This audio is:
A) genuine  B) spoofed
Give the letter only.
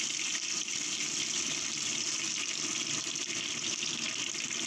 A